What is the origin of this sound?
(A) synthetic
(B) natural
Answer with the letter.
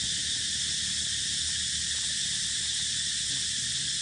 B